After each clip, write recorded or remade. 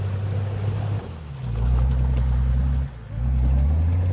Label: recorded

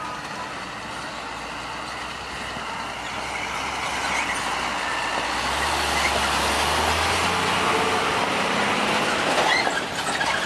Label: recorded